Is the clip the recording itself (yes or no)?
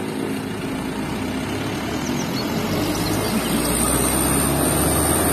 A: yes